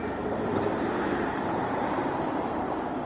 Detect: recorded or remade remade